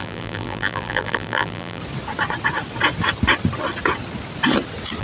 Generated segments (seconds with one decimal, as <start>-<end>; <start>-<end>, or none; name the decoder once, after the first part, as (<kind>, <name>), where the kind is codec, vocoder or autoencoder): 0.0-1.8 (vocoder, BigVGAN v2)